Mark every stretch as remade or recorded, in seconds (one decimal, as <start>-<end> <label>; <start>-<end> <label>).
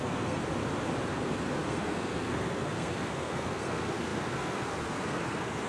0.0-0.4 remade; 0.4-1.1 recorded; 1.1-5.7 remade